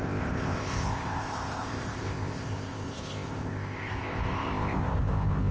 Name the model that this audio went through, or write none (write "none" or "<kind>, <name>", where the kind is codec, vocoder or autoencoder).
codec, ZipCodec